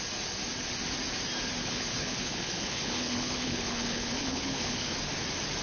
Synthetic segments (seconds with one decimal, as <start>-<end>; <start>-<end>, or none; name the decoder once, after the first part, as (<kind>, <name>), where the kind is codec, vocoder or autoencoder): 1.6-4.9 (codec, HILCodec)